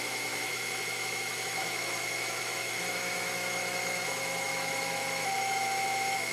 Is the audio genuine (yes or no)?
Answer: no